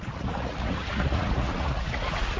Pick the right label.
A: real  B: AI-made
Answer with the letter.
B